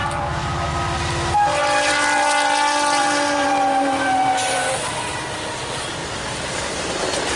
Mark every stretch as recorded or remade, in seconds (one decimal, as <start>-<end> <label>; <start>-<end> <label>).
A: 0.0-0.7 remade; 0.7-1.5 recorded; 1.5-5.0 remade; 5.0-6.0 recorded; 6.0-6.9 remade; 6.9-7.4 recorded